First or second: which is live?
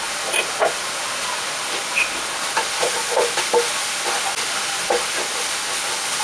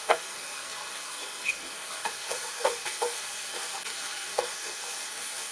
first